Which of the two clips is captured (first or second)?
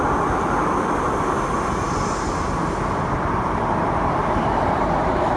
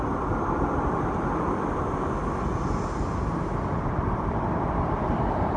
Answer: first